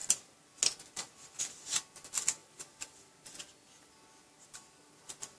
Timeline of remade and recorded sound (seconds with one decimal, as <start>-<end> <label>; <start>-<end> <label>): 0.0-5.4 recorded